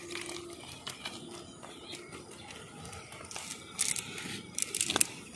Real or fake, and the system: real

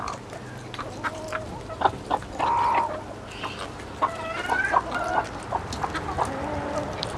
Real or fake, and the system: real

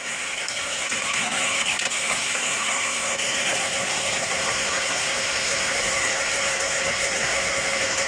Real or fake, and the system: fake, codec, SNAC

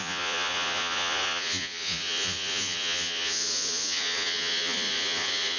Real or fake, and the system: fake, vocoder, Vocos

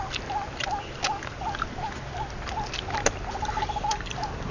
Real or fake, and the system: real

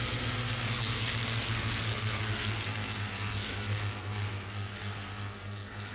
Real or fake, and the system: fake, codec, SNAC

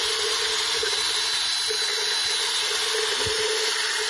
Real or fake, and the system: real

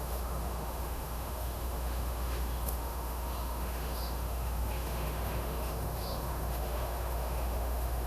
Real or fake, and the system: fake, autoencoder, DAC-VAE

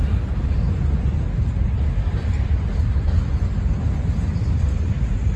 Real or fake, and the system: real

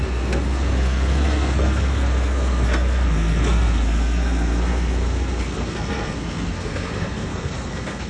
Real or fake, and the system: fake, codec, SNAC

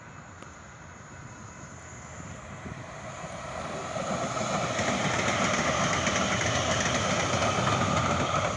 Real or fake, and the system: real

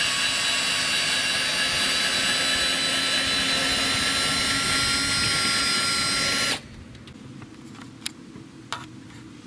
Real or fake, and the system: real